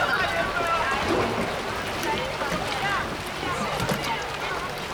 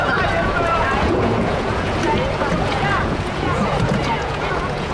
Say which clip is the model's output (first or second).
second